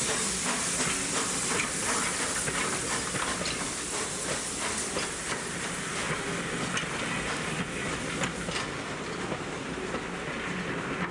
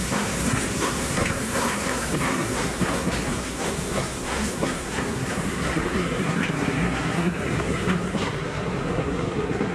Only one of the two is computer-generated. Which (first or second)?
second